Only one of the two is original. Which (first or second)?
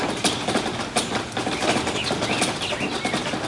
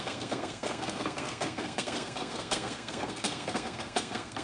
first